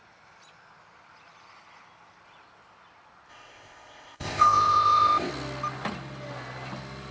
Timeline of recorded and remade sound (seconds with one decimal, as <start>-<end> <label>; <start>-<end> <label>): 0.0-3.3 recorded; 3.3-5.3 remade; 5.3-7.1 recorded